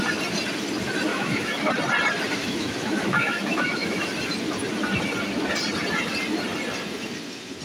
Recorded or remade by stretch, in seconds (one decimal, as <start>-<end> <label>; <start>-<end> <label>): 0.0-1.1 recorded; 1.1-1.7 remade; 1.7-2.4 recorded; 2.4-4.1 remade; 4.1-7.6 recorded